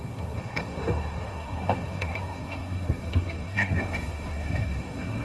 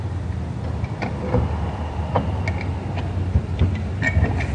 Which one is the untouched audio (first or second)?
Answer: second